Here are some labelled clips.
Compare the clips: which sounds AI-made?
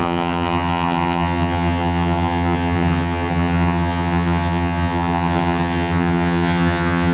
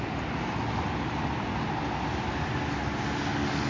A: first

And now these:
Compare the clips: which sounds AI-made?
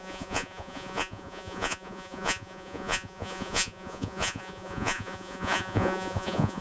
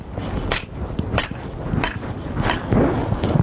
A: first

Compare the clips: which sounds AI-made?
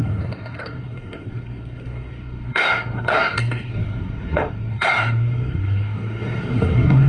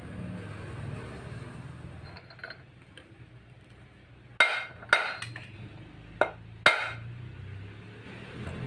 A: first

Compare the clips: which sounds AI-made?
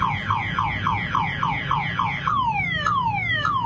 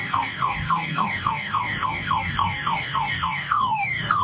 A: second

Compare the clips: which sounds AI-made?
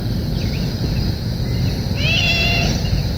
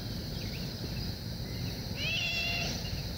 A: second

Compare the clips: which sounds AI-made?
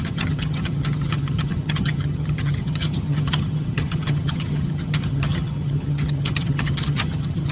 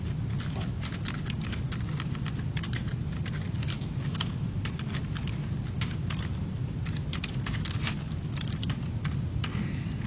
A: first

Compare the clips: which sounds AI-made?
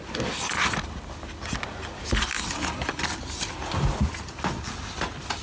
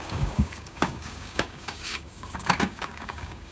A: second